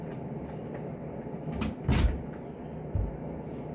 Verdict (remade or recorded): recorded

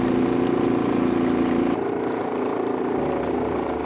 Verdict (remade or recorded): recorded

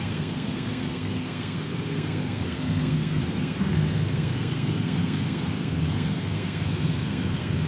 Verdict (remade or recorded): remade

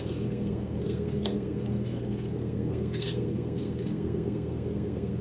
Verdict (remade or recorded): remade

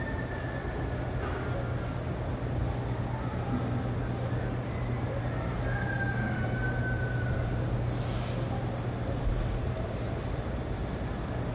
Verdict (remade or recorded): recorded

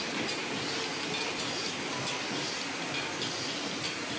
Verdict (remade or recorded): recorded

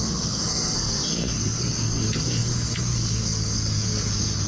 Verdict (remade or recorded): remade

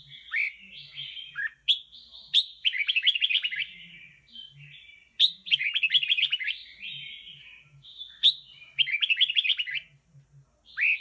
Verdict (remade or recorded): recorded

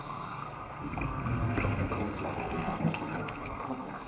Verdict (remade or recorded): remade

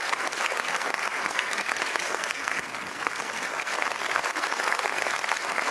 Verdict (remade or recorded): remade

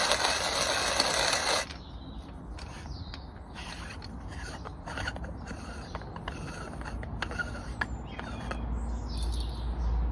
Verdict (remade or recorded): recorded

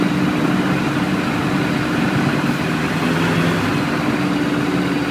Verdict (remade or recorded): recorded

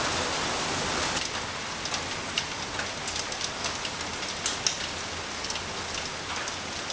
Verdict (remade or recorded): recorded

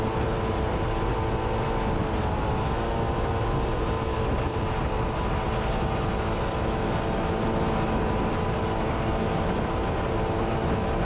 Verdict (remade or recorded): recorded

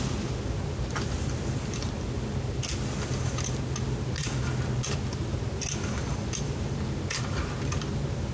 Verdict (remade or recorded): recorded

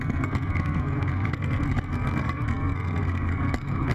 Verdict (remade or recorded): remade